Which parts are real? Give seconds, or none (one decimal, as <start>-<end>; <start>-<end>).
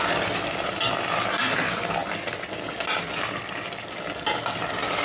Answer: 0.0-5.0